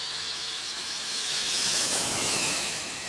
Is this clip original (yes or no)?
no